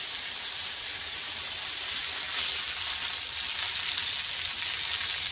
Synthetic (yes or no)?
no